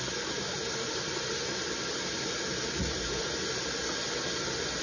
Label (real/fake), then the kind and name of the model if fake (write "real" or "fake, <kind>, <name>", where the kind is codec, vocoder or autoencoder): real